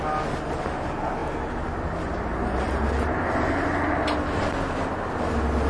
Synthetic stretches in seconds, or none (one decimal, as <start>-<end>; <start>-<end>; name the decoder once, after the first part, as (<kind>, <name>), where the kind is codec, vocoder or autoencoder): none